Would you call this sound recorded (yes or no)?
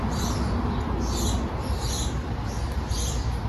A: yes